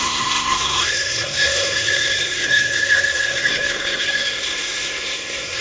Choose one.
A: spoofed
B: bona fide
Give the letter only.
A